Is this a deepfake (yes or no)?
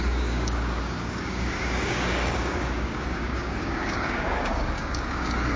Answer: yes